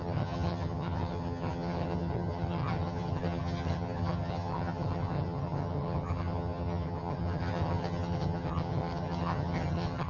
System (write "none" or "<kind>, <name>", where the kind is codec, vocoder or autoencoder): vocoder, HiFi-GAN